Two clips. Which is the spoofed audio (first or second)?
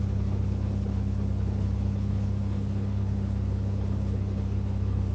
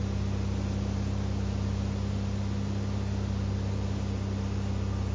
first